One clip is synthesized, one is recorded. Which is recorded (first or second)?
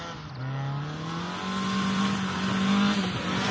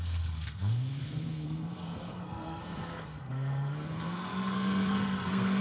first